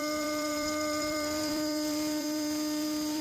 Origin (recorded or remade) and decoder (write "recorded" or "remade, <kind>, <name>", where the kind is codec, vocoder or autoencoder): remade, vocoder, BigVGAN v2